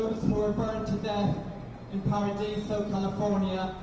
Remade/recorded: recorded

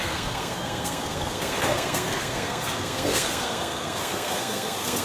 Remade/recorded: remade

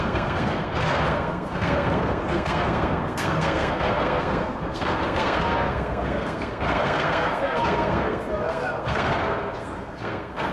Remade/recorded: remade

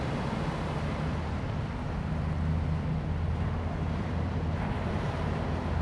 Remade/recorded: recorded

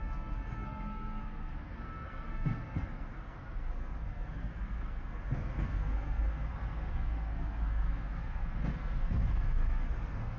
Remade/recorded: remade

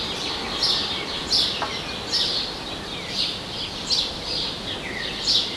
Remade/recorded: recorded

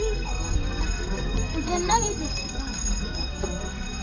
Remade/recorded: remade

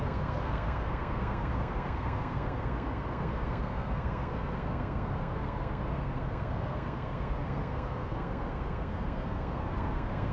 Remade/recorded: remade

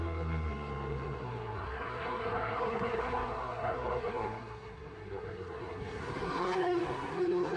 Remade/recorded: remade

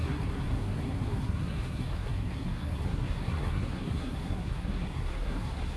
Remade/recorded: remade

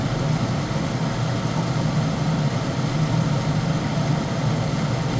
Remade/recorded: recorded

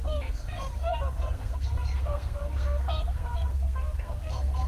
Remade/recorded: remade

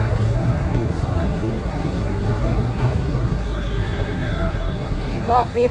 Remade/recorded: remade